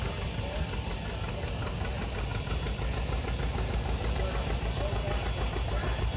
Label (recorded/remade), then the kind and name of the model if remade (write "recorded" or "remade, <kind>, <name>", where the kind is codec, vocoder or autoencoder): recorded